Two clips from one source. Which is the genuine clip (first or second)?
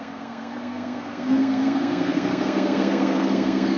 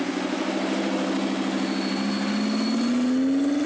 second